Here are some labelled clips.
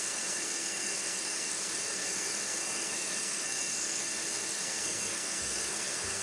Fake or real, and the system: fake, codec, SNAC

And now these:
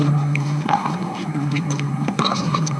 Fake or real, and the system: fake, codec, SNAC